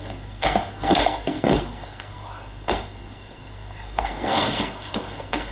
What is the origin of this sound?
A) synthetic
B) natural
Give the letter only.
A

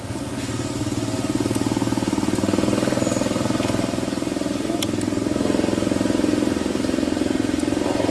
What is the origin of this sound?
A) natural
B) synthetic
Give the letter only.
A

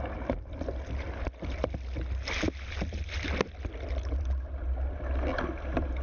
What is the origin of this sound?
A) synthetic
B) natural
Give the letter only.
B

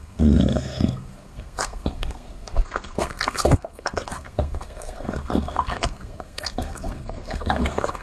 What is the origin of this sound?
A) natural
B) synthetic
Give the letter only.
B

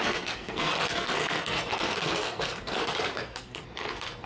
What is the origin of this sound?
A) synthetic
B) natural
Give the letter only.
A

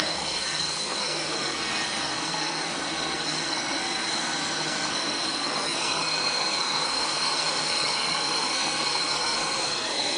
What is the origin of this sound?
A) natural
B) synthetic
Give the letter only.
B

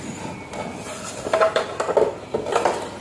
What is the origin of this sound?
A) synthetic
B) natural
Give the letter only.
B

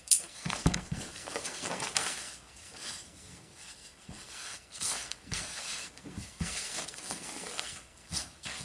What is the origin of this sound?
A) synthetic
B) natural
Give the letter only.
A